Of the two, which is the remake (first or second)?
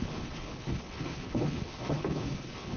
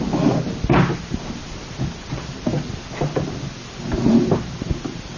first